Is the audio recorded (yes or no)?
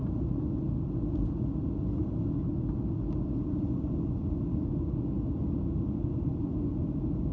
yes